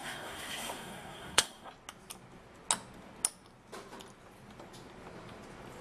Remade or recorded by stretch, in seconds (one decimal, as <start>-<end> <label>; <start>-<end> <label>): 0.0-1.7 remade; 1.7-5.8 recorded